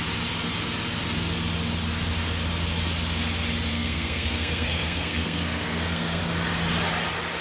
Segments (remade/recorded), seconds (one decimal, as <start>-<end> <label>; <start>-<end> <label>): 0.0-3.7 recorded; 3.7-6.2 remade; 6.2-7.4 recorded